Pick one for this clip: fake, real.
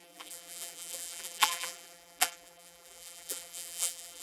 fake